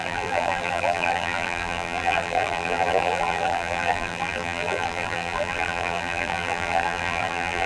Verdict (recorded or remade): remade